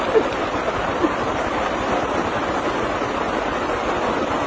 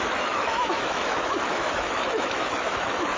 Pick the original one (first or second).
first